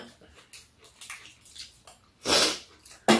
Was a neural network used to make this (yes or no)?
no